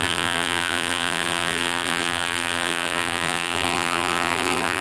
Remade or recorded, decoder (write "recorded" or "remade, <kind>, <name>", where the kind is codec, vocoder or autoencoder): remade, vocoder, BigVGAN v2